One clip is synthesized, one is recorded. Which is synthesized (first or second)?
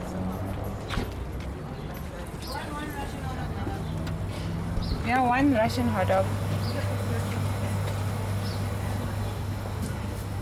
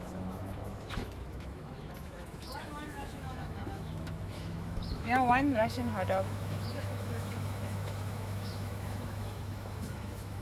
second